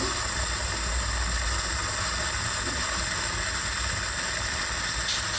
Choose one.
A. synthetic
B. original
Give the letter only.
B